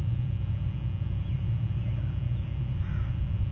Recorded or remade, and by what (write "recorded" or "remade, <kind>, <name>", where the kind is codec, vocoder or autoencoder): recorded